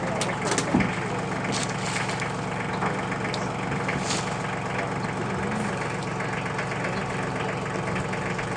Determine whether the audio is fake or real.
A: real